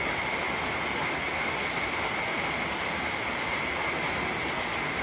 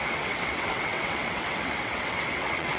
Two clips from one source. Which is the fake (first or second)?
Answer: second